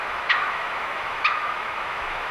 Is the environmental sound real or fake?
fake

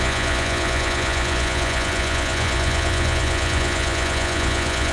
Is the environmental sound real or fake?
fake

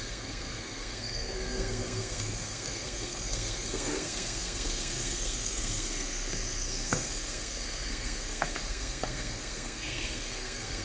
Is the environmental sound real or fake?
fake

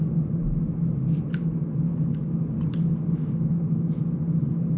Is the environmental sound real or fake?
real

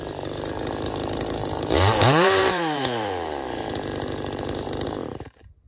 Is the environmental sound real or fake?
fake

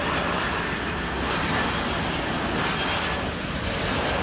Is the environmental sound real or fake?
real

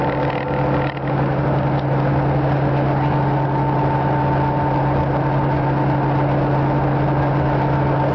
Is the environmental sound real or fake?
real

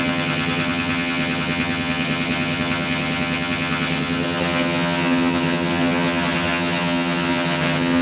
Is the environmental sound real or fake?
fake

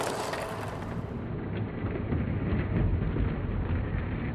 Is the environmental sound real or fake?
real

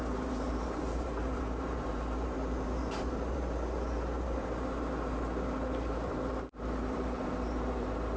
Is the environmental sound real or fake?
fake